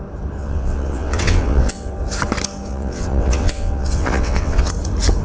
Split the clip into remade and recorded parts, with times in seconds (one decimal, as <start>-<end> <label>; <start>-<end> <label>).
0.0-0.4 recorded; 0.4-1.9 remade; 1.9-2.7 recorded; 2.7-4.7 remade; 4.7-5.2 recorded